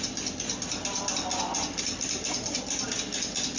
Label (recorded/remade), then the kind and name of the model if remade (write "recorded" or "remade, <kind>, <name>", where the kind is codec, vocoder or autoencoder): recorded